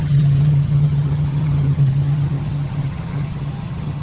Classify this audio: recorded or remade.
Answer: remade